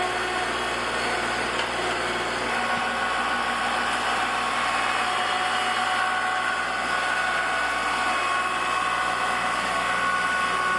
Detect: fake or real real